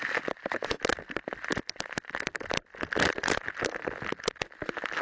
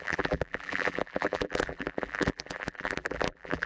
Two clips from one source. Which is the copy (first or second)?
second